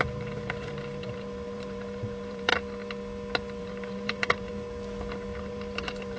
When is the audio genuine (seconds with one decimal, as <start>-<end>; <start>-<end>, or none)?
2.5-3.6; 4.5-5.4